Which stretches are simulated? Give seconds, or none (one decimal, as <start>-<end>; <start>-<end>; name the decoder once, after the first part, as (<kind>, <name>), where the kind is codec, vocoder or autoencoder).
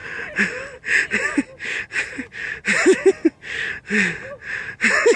none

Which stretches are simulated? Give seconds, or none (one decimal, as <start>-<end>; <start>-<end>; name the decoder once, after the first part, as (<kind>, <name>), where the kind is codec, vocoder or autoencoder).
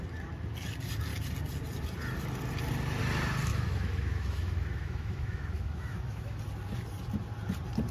3.5-6.4 (autoencoder, DAC-VAE)